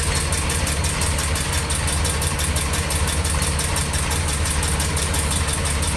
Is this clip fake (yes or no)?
no